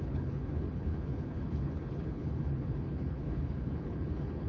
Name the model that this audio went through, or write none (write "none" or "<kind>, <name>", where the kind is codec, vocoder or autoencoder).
codec, HILCodec